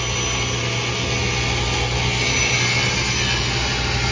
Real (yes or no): yes